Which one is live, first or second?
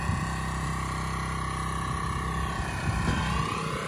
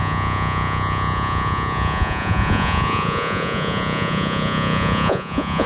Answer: first